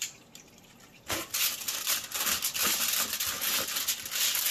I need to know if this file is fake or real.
real